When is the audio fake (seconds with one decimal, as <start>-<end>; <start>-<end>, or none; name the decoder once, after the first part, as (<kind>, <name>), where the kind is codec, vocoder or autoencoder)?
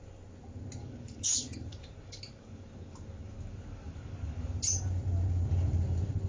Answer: 0.8-4.6 (codec, DAC)